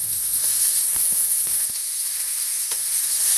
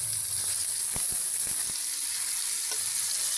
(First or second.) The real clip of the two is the second